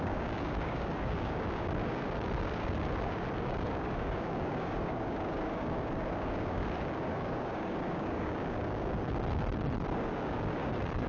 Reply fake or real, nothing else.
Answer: fake